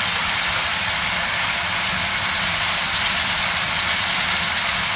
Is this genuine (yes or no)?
yes